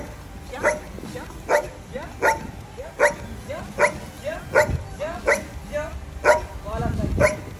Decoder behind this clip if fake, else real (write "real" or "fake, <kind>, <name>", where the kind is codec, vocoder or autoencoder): real